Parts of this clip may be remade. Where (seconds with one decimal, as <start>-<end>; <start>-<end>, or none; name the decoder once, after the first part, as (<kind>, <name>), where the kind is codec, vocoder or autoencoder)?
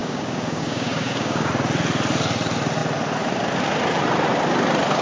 0.0-1.5 (codec, DAC)